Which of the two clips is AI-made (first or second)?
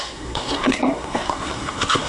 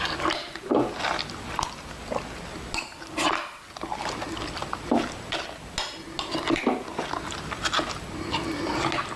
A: first